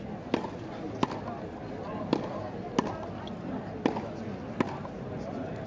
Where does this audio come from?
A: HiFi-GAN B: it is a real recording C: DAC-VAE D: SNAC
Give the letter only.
B